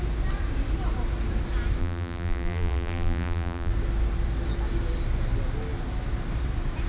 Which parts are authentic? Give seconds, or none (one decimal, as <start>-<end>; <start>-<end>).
0.0-1.8; 3.7-6.9